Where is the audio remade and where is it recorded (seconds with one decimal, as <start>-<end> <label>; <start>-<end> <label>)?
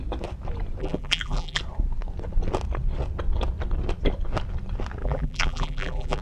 0.0-0.8 recorded; 0.8-1.6 remade; 1.6-5.0 recorded; 5.0-6.2 remade